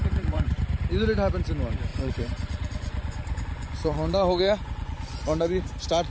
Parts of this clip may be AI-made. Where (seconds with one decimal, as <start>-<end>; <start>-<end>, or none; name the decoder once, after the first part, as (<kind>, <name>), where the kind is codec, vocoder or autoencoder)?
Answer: 0.0-0.6 (vocoder, Vocos); 1.9-5.6